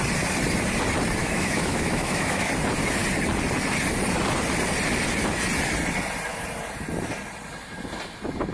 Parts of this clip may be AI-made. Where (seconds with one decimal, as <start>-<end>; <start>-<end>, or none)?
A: 1.2-2.5